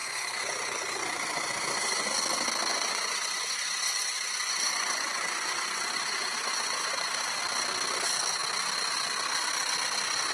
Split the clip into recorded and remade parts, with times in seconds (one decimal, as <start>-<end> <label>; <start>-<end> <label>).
0.0-2.1 remade; 2.1-2.7 recorded; 2.7-7.4 remade; 7.4-10.3 recorded